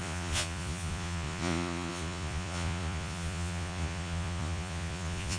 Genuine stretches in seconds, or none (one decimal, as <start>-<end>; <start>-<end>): none